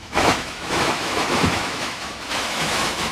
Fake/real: fake